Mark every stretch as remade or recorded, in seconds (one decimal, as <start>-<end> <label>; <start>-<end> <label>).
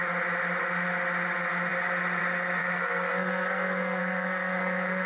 0.0-2.6 recorded; 2.6-5.1 remade